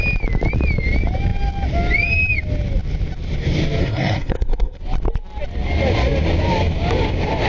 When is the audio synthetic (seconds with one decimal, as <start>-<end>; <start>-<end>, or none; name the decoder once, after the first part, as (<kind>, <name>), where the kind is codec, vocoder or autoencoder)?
3.8-4.8 (codec, SNAC)